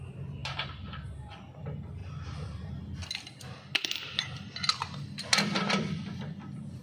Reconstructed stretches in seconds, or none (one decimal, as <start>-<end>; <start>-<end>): none